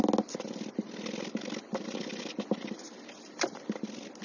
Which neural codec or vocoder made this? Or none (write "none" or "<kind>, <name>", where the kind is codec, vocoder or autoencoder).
none